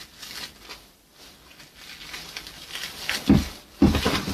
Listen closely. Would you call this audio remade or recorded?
remade